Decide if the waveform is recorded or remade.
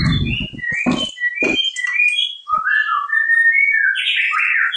recorded